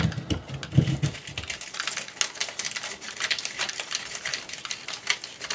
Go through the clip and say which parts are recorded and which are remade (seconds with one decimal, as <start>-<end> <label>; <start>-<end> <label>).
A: 0.0-2.4 recorded; 2.4-3.9 remade; 3.9-5.5 recorded